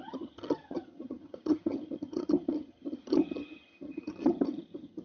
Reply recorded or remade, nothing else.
remade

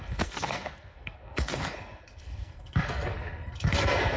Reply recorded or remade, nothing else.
remade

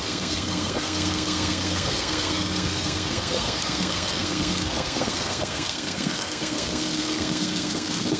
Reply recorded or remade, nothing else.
remade